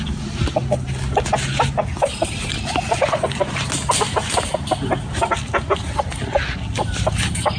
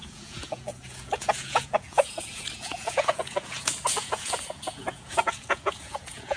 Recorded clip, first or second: first